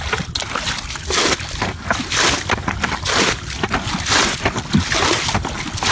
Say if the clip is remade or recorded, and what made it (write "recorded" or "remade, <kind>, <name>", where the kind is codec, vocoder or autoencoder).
recorded